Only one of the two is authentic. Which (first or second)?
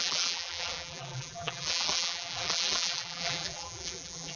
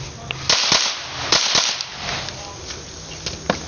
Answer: second